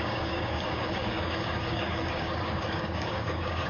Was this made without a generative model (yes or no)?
no